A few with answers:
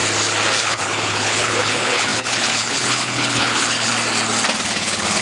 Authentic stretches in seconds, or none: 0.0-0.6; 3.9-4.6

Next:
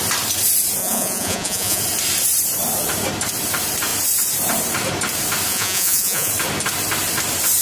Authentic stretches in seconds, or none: 0.0-0.8; 1.8-5.5; 6.3-7.6

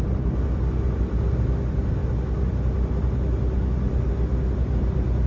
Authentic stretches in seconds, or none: 0.0-5.3

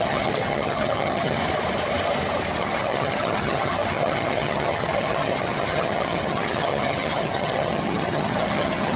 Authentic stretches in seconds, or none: 1.4-2.6